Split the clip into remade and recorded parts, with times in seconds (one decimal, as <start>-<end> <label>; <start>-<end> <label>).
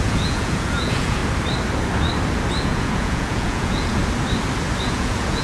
0.0-1.2 remade; 1.2-2.6 recorded; 2.6-4.0 remade; 4.0-4.8 recorded; 4.8-5.4 remade